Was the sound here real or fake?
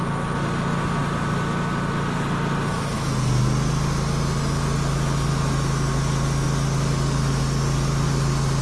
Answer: real